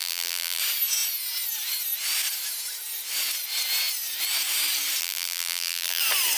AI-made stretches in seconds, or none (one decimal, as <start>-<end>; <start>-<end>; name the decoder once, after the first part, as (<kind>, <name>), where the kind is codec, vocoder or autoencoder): 0.0-0.6 (vocoder, BigVGAN v2); 5.0-6.0